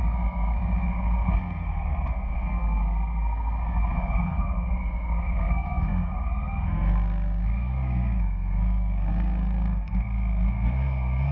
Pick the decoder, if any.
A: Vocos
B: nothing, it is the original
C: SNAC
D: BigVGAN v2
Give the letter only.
C